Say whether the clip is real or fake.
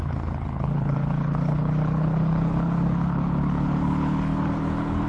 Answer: fake